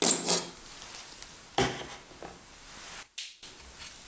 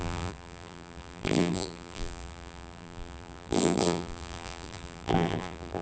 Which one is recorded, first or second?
first